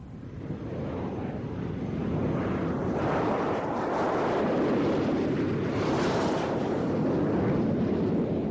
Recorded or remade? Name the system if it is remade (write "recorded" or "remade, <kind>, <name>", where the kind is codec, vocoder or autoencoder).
recorded